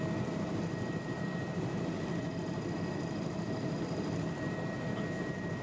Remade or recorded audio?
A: remade